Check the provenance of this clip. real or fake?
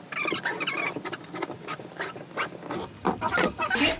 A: real